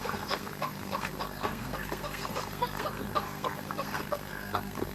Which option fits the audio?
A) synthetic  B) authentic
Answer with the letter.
A